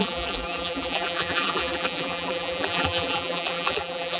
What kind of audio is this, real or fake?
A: fake